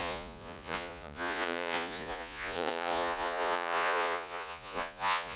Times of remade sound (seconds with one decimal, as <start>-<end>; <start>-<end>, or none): 0.0-5.4